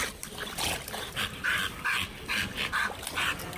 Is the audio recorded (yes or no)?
yes